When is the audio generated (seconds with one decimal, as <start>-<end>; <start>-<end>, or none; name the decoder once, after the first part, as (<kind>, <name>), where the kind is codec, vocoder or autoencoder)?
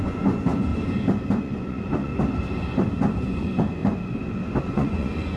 0.0-0.7 (vocoder, Vocos); 1.4-2.1; 3.2-3.8; 4.6-5.4